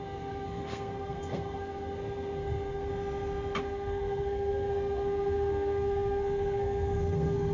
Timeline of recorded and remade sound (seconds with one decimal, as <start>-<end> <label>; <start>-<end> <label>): 0.0-2.9 remade; 2.9-3.6 recorded; 3.6-7.5 remade